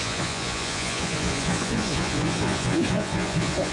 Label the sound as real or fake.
fake